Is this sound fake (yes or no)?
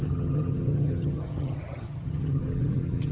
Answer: yes